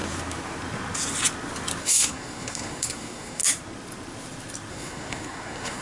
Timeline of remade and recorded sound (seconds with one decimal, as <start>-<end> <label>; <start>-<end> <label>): 0.0-1.8 recorded; 1.8-3.4 remade; 3.4-4.7 recorded; 4.7-5.8 remade